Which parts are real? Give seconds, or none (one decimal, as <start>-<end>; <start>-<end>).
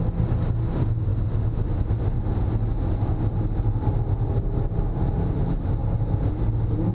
0.0-6.9